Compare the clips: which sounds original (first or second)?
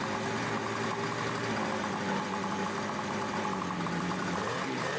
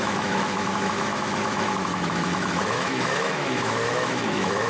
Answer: first